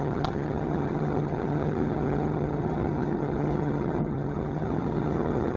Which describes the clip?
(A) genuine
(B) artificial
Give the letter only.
B